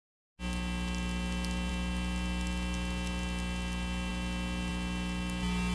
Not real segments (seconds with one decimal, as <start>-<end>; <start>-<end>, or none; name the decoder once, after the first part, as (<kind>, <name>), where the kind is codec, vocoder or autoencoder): none